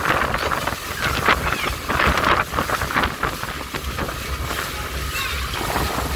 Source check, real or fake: real